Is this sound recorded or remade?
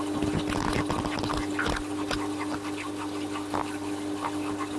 recorded